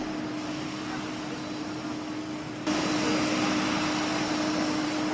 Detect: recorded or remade recorded